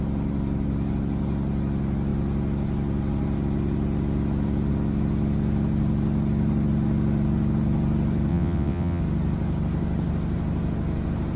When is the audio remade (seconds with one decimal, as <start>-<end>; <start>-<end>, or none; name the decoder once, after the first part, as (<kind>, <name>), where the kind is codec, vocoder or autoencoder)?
8.3-9.0 (vocoder, WaveNeXt)